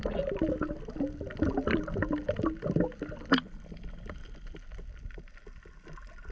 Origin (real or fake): real